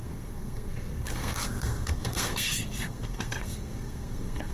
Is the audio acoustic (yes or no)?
no